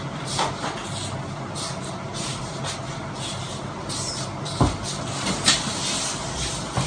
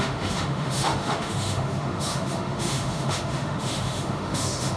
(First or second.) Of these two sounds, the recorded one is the first